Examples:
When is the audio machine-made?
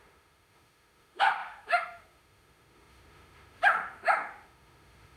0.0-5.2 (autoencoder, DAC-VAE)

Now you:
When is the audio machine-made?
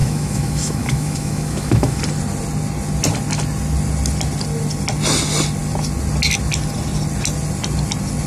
0.0-2.0 (autoencoder, DAC-VAE)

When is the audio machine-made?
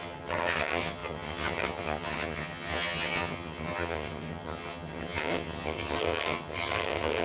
0.0-7.2 (vocoder, HiFi-GAN)